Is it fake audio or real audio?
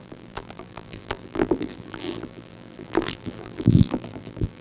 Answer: fake